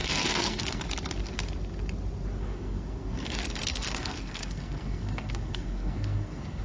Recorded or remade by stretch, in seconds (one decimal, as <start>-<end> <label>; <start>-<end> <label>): 0.0-0.8 remade; 0.8-2.4 recorded; 2.4-6.6 remade

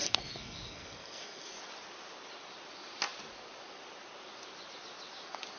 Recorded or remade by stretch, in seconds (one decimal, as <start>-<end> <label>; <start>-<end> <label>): 0.0-1.6 remade; 1.6-5.6 recorded

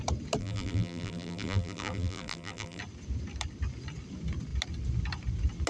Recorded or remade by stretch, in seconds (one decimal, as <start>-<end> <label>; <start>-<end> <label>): 0.0-0.4 recorded; 0.4-2.8 remade; 2.8-5.7 recorded

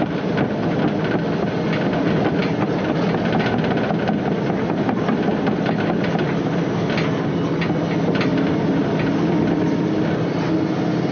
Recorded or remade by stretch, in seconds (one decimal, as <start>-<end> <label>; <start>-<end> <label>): 0.0-11.1 recorded

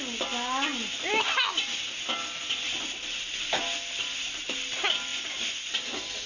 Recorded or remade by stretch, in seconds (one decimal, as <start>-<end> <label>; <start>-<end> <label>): 0.0-6.3 recorded

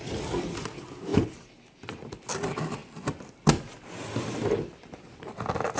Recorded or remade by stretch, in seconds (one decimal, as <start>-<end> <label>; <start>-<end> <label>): 0.0-5.8 recorded

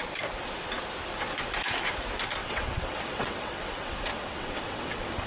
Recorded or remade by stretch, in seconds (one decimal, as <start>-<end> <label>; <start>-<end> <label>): 0.0-2.4 recorded; 2.4-5.3 remade

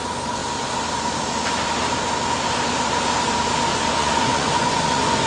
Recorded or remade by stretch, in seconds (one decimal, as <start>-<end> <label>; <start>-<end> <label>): 0.0-3.7 recorded; 3.7-5.3 remade